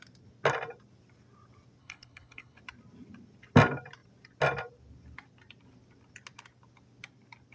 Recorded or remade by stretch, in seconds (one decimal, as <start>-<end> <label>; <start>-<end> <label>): 0.0-1.8 recorded; 1.8-2.6 remade; 2.6-7.5 recorded